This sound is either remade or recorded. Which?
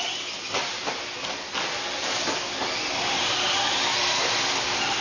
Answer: recorded